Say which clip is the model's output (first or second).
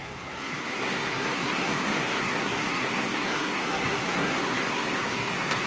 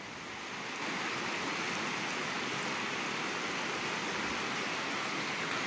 first